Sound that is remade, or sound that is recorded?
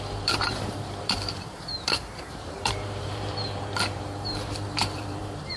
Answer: remade